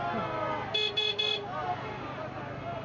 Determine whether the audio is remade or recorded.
recorded